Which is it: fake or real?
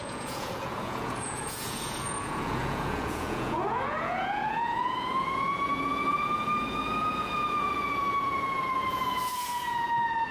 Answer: fake